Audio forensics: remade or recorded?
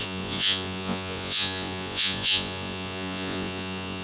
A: remade